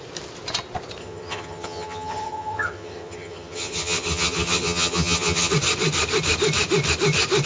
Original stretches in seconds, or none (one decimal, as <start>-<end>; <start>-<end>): 0.0-1.0; 5.5-7.5